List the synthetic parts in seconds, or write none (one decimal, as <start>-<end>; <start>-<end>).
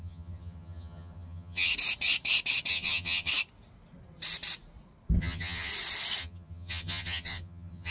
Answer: 0.0-1.7; 2.7-3.3; 5.2-5.7; 6.2-7.9